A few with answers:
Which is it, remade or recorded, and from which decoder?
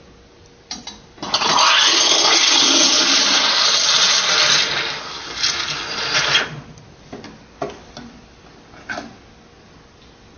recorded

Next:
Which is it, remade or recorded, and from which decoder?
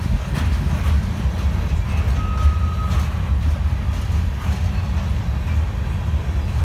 recorded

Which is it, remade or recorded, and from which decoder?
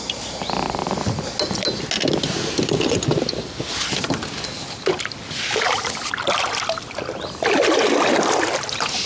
recorded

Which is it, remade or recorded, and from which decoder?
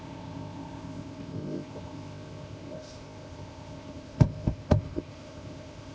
remade, codec, ZipCodec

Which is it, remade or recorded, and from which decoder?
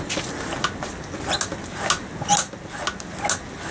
recorded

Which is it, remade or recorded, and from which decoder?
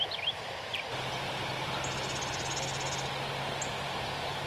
recorded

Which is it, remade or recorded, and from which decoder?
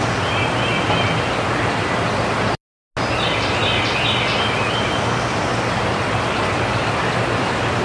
recorded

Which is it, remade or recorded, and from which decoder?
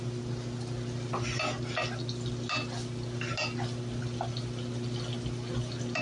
recorded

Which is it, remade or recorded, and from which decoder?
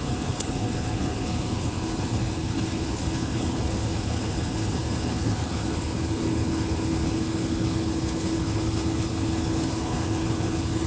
remade, codec, HILCodec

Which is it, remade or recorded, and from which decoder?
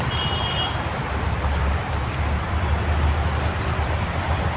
recorded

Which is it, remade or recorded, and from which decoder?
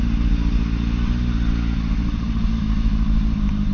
recorded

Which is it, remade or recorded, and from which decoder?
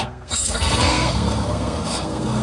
remade, codec, SNAC